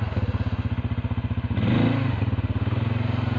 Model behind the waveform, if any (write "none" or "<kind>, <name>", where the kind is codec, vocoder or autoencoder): none